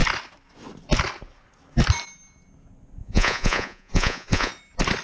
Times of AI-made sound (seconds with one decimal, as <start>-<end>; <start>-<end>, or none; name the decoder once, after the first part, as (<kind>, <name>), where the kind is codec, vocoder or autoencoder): 3.0-4.5 (vocoder, Vocos)